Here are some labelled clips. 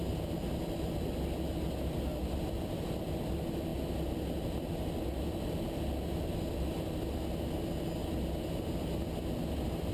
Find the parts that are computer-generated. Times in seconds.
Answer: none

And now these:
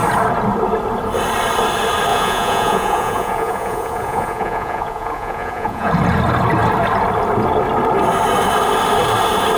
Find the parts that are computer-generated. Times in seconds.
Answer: 2.1-5.9 (vocoder, Vocos)